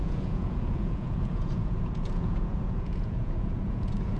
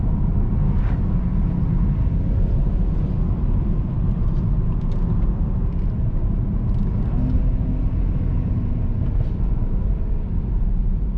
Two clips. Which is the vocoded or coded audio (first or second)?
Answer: first